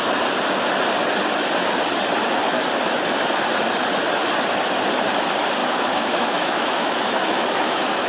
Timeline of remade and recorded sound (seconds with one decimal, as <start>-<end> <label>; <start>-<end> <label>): 0.0-5.6 recorded; 5.6-8.1 remade